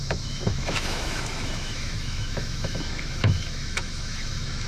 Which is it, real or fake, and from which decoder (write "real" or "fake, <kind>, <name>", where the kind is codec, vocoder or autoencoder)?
fake, autoencoder, DAC-VAE